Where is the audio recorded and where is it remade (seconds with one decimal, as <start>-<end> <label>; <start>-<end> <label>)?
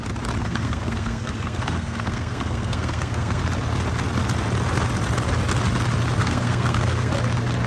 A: 0.0-0.4 recorded; 0.4-3.4 remade; 3.4-6.2 recorded; 6.2-7.1 remade; 7.1-7.7 recorded